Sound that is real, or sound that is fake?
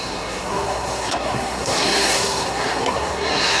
fake